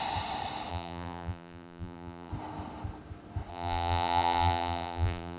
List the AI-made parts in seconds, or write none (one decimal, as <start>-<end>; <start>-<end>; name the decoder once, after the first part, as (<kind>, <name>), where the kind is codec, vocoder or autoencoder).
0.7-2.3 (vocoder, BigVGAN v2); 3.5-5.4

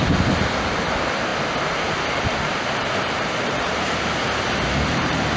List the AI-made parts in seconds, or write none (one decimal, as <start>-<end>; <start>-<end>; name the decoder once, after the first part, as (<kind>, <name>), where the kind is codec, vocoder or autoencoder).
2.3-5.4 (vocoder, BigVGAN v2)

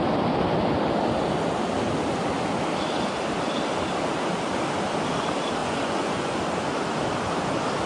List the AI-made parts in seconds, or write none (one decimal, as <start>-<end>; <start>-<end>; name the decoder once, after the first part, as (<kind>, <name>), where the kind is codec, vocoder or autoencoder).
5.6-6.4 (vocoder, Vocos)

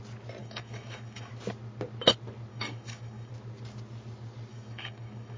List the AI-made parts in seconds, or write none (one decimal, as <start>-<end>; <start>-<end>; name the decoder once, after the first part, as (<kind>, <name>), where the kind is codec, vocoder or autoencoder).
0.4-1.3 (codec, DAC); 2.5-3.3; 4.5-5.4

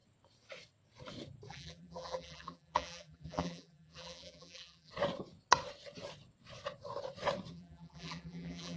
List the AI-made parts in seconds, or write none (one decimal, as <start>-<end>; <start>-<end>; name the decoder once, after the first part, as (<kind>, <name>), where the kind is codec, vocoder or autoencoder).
1.5-4.9 (vocoder, BigVGAN v2); 7.5-8.8

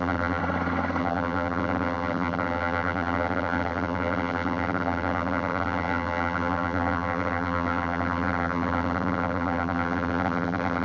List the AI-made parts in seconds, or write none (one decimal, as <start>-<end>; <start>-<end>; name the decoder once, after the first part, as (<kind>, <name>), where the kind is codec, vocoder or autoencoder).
0.0-0.4 (vocoder, BigVGAN v2); 1.0-10.8

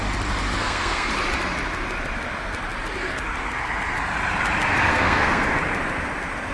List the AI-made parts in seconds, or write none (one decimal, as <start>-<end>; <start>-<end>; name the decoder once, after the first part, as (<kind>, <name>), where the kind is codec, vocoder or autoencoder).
0.6-1.1 (codec, SNAC); 4.9-5.6

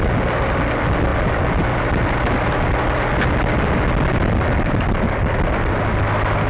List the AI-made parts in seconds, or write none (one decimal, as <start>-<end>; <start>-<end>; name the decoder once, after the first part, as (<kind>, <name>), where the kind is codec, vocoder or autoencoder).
none